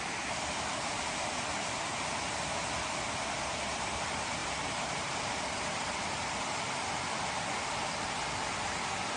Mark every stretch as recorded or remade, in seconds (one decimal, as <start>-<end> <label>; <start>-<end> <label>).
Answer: 0.0-4.4 recorded; 4.4-6.1 remade; 6.1-9.2 recorded